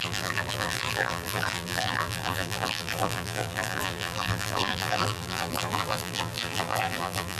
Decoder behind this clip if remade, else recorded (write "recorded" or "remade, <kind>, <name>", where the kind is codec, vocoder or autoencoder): remade, vocoder, BigVGAN v2